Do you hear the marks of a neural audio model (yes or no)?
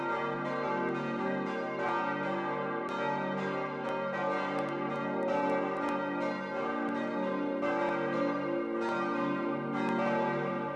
no